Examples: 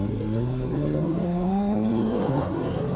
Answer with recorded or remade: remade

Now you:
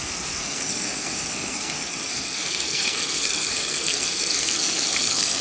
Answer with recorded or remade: remade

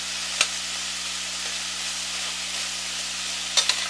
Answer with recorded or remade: recorded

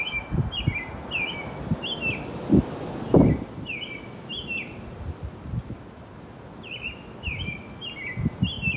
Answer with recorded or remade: recorded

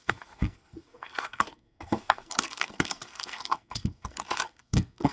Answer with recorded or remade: remade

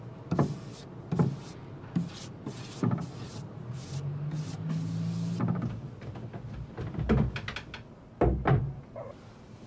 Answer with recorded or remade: recorded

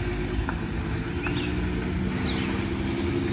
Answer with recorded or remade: recorded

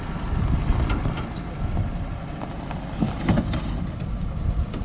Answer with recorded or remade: recorded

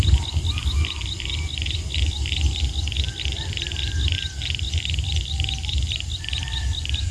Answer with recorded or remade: recorded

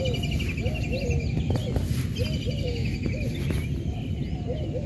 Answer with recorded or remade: recorded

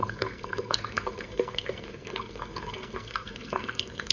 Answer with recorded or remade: remade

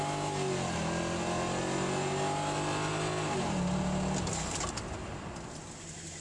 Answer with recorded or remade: recorded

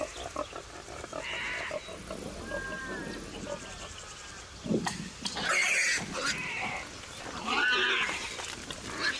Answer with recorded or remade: recorded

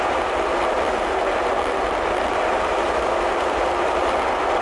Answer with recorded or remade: recorded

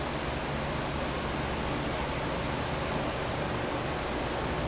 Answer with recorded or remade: recorded